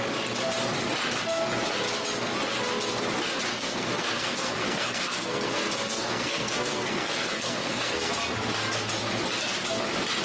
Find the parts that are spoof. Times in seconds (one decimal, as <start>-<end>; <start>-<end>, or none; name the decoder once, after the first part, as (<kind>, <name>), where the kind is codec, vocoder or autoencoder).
3.5-8.1 (codec, SNAC)